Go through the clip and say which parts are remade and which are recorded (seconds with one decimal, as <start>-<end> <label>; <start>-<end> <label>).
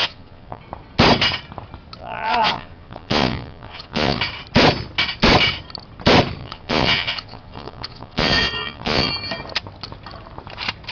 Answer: 0.0-0.6 remade; 0.6-2.0 recorded; 2.0-4.2 remade; 4.2-6.4 recorded; 6.4-9.1 remade; 9.1-10.9 recorded